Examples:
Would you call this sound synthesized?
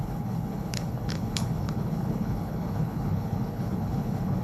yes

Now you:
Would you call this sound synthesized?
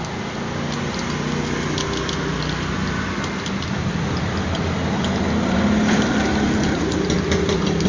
no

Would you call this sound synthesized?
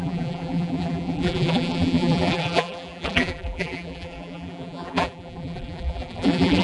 yes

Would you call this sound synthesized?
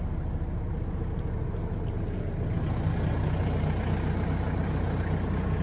no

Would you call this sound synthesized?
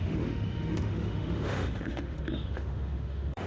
yes